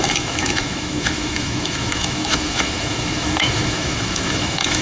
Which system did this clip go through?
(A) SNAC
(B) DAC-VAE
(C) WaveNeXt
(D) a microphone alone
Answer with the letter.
B